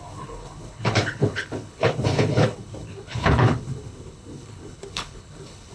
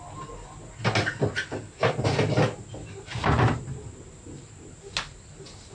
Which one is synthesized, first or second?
first